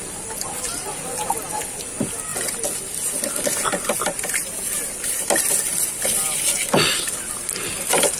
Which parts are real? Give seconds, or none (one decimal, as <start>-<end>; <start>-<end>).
0.0-8.2